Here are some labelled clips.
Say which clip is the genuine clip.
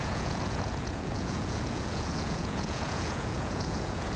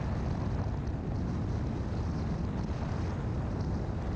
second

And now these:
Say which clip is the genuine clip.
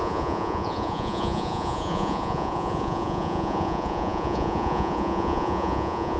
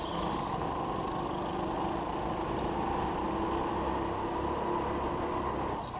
second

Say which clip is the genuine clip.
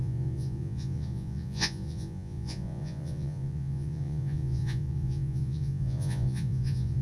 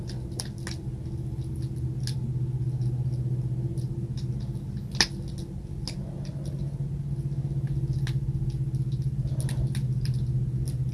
second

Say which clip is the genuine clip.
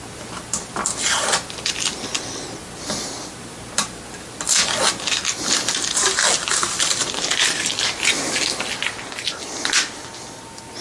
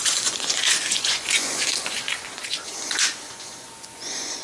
first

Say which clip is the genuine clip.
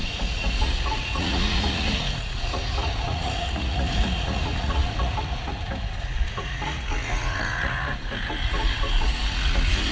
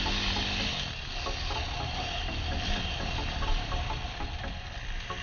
second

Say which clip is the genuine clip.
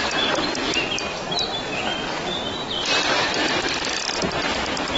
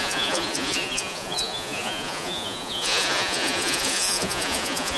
first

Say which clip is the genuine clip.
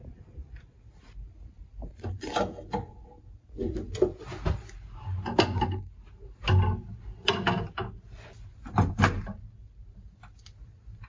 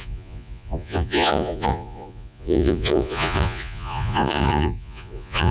first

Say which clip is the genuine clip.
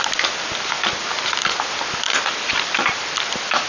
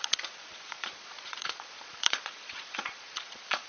first